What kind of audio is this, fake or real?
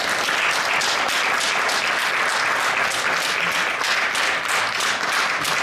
real